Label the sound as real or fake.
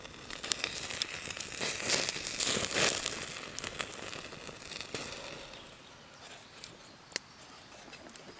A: real